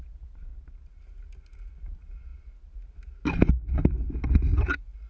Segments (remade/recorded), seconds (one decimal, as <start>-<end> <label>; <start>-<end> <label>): 0.0-5.1 recorded